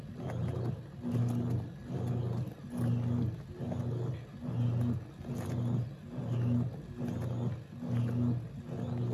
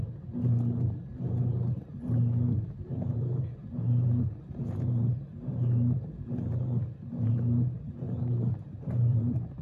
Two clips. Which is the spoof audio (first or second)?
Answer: second